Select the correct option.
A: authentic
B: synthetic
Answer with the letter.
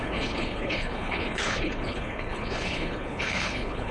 B